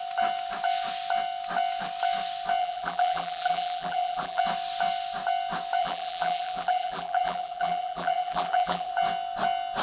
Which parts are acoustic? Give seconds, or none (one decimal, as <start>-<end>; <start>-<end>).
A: 0.0-2.6; 4.4-5.8; 8.9-9.8